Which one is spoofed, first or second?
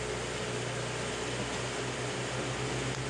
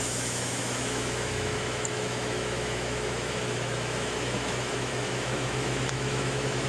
second